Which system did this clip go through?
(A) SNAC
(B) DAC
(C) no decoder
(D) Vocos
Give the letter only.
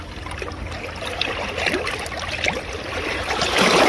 C